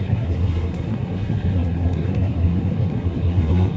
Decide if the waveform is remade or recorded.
remade